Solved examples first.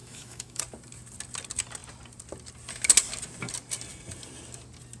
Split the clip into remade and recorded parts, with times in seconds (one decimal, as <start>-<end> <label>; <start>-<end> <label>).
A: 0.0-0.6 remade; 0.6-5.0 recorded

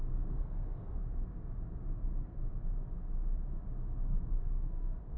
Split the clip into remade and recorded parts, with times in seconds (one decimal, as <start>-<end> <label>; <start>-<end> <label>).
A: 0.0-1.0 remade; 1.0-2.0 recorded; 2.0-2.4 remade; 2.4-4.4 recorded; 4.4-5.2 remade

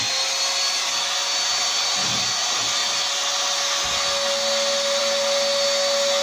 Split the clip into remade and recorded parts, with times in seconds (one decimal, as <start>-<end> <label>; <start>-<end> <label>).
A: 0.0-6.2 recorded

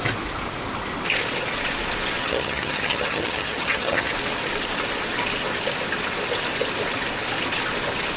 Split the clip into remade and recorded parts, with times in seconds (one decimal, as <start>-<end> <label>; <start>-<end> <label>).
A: 0.0-2.2 recorded; 2.2-4.1 remade; 4.1-8.2 recorded

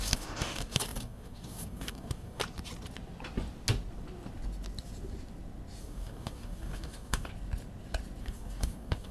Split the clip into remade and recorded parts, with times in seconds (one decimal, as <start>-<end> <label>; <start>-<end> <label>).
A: 0.0-2.4 remade; 2.4-5.8 recorded; 5.8-7.3 remade; 7.3-8.2 recorded; 8.2-9.1 remade

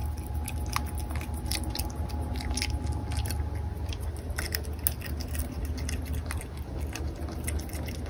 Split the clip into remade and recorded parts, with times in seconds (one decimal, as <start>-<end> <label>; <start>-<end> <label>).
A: 0.0-8.1 recorded